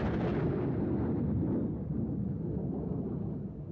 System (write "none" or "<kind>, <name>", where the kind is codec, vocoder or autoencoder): none